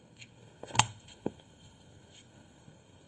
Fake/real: fake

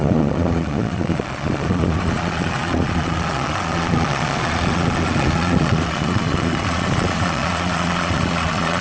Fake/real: fake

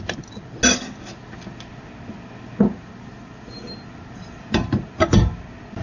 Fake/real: real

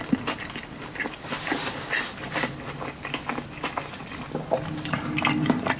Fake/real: real